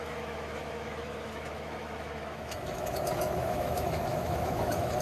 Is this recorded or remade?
remade